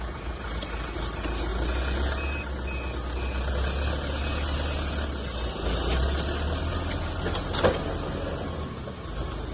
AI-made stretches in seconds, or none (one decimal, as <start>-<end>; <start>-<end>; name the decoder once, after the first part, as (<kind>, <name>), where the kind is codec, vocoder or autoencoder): none